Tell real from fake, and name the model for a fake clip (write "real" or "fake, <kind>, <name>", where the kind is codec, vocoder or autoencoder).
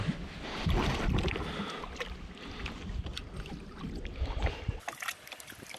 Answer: real